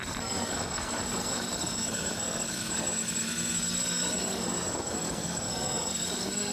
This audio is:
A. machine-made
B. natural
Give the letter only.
A